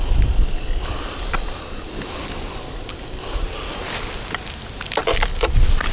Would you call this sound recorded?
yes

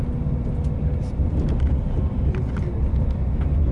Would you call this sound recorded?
yes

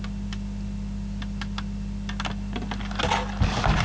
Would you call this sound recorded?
yes